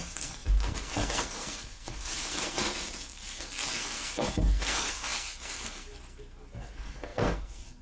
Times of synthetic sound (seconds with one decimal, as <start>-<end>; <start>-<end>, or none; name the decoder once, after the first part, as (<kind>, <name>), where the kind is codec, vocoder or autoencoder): 0.0-7.8 (codec, SNAC)